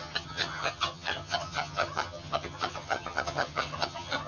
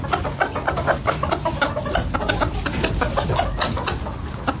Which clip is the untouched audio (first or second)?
second